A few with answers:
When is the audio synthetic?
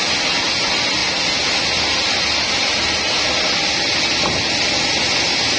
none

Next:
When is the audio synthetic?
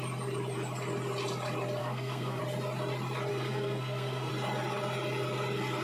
1.8-2.4 (codec, SNAC); 3.3-4.3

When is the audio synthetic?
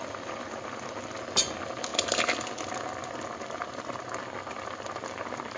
none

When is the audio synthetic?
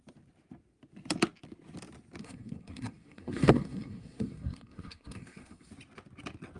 2.2-5.7 (codec, SNAC)